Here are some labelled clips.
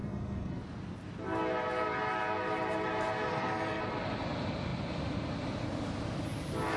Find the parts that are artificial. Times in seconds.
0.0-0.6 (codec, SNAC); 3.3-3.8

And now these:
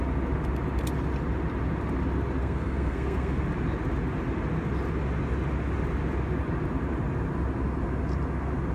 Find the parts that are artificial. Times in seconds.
2.4-3.4 (codec, SNAC)